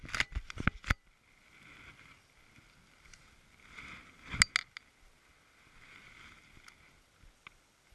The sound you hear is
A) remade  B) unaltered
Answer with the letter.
B